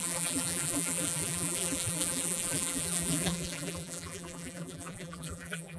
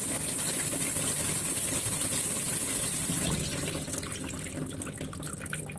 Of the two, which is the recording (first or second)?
second